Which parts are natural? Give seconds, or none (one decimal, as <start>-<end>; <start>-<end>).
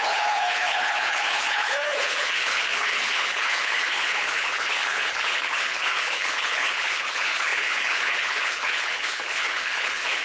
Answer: none